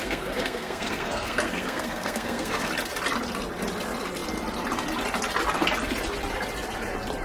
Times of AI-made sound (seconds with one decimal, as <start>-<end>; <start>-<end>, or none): 0.0-2.7